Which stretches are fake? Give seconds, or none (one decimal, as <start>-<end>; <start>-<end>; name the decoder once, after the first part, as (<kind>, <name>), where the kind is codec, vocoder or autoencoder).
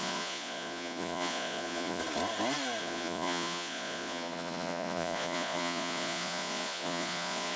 0.0-2.0 (vocoder, Vocos); 2.8-7.6